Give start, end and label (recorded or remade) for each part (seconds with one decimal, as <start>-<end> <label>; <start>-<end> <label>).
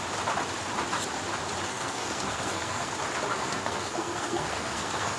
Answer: 0.0-1.7 recorded; 1.7-2.9 remade; 2.9-3.3 recorded; 3.3-5.2 remade